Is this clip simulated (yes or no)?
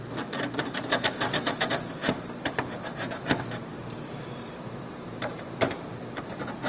yes